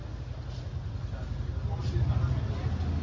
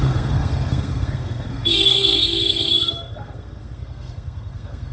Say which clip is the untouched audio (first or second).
first